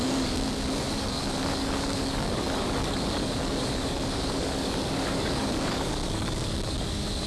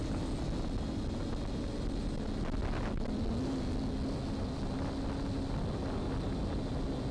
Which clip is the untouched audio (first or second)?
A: second